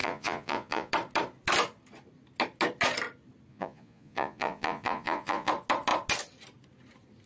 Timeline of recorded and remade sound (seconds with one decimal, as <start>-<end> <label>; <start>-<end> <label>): 0.0-0.9 remade; 0.9-3.5 recorded; 3.5-5.5 remade; 5.5-7.3 recorded